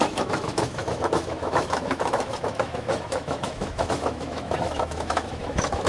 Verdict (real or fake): fake